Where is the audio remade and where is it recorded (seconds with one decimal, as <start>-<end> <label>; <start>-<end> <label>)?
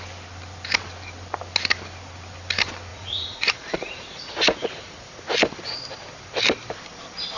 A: 0.0-2.9 recorded; 2.9-5.2 remade; 5.2-7.4 recorded